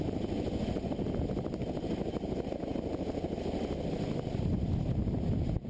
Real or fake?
real